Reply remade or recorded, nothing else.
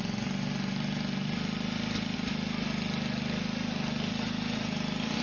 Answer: recorded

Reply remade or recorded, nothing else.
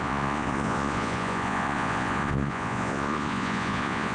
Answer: remade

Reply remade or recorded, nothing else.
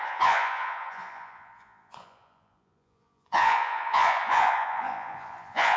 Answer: remade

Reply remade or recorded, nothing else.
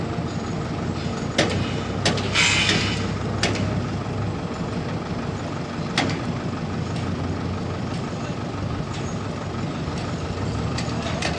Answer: recorded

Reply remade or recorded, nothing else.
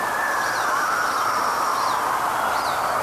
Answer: recorded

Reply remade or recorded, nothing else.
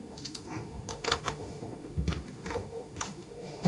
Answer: remade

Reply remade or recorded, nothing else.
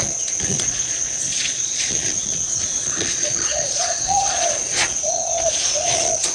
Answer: remade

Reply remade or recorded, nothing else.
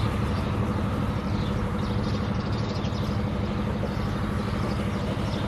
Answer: recorded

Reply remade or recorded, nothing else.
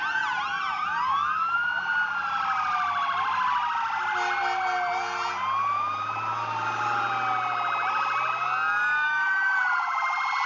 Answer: recorded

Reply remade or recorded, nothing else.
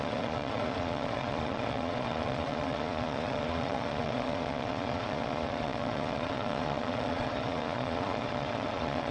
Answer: remade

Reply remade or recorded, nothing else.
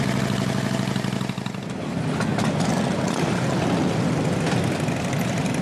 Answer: recorded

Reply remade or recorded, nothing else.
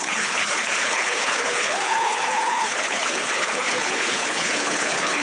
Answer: remade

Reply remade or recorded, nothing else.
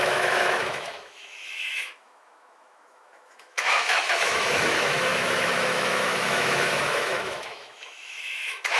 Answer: remade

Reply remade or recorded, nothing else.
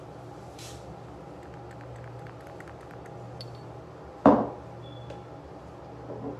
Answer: recorded